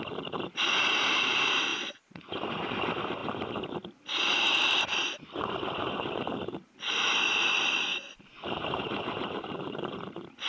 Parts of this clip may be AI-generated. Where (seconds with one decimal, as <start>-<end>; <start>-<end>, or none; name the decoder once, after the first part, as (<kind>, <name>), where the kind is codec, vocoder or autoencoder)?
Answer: 7.9-10.1 (vocoder, BigVGAN v2)

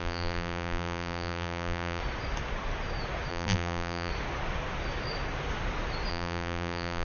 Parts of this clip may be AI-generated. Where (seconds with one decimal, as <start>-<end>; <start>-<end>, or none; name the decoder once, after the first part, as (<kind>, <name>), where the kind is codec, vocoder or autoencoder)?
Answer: 0.0-2.0 (vocoder, BigVGAN v2); 3.3-4.1; 6.1-7.0

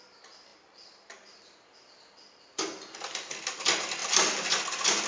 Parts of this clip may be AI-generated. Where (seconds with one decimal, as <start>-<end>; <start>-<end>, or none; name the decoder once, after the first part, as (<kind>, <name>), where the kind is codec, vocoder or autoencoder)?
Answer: 0.5-3.6 (vocoder, BigVGAN v2); 4.0-4.6

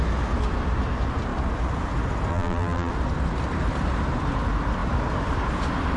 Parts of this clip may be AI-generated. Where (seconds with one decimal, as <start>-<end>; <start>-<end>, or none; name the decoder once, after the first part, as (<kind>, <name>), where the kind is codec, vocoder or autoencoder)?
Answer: 2.3-2.9 (vocoder, BigVGAN v2)

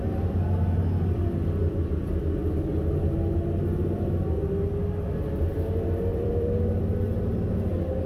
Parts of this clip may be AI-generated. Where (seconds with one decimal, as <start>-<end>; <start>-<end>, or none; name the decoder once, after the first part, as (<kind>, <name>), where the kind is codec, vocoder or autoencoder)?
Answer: 6.1-6.8 (vocoder, BigVGAN v2)

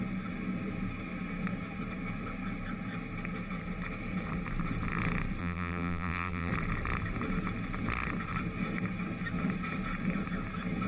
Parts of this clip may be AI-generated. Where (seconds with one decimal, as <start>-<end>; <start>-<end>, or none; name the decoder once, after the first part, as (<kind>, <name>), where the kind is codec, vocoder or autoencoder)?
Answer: 5.4-6.5 (vocoder, BigVGAN v2)

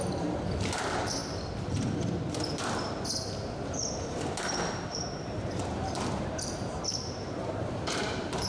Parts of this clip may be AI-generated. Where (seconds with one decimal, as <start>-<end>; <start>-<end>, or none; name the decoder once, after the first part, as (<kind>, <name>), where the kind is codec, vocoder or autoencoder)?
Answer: 0.0-1.2 (vocoder, BigVGAN v2); 5.2-8.5